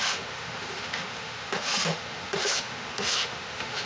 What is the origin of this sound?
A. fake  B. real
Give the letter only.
A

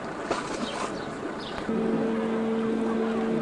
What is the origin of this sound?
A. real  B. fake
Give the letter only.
A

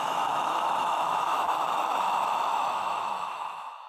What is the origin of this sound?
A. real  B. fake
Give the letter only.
B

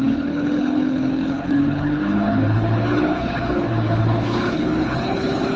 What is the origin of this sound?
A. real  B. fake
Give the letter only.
B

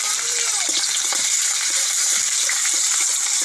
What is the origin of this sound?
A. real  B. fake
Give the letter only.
B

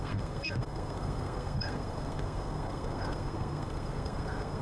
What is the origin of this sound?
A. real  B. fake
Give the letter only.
B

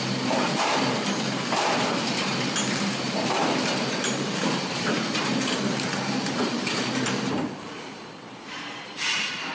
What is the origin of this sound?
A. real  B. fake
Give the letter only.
B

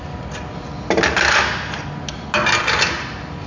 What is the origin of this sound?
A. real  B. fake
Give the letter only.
A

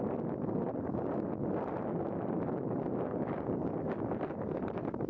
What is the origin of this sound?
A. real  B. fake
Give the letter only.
A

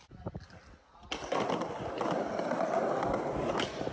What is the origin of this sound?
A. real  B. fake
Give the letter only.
A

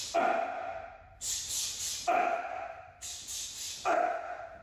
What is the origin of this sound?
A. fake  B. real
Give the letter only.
B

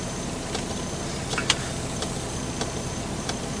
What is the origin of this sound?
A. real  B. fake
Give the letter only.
B